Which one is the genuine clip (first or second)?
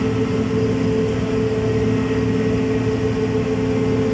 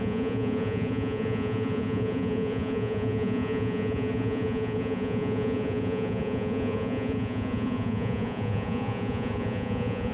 first